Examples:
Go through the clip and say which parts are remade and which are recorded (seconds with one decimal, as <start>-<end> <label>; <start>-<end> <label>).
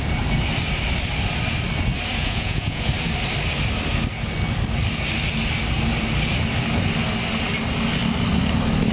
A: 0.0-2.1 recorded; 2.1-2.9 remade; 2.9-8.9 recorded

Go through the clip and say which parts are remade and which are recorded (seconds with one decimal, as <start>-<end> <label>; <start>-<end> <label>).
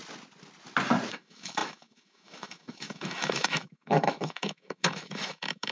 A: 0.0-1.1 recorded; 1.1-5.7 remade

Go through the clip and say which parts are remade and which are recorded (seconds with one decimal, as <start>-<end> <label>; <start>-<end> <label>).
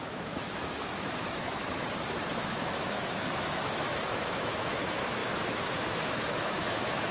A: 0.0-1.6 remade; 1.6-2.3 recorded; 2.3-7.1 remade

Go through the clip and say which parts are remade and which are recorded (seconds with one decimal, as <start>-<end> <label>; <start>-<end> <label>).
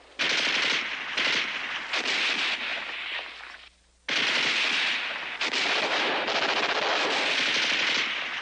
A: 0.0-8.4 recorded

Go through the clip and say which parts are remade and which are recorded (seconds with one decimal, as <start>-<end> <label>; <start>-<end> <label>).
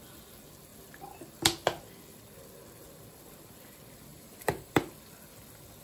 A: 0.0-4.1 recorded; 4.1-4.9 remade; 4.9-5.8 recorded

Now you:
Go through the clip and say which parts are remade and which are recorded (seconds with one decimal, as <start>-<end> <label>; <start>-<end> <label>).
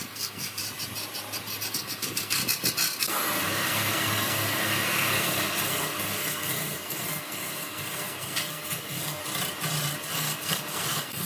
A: 0.0-0.6 remade; 0.6-1.7 recorded; 1.7-2.4 remade; 2.4-3.0 recorded; 3.0-9.2 remade; 9.2-10.1 recorded; 10.1-11.3 remade